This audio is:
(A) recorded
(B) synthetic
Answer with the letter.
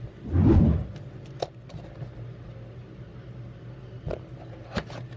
A